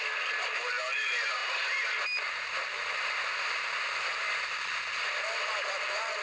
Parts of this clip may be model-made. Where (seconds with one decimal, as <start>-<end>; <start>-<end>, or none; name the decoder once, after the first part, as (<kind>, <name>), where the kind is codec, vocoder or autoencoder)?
none